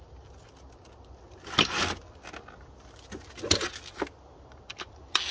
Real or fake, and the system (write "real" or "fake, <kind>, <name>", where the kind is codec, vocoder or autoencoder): real